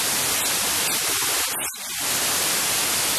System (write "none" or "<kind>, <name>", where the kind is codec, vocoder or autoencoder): none